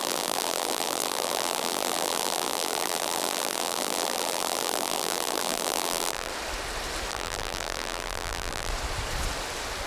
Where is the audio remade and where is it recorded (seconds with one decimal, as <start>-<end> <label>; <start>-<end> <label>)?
0.0-6.3 remade; 6.3-7.1 recorded; 7.1-8.7 remade; 8.7-9.9 recorded